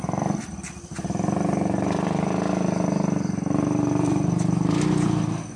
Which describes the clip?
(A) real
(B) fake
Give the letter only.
A